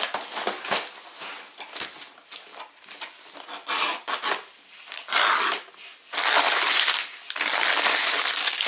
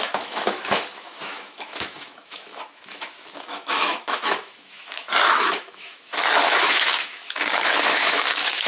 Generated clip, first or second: second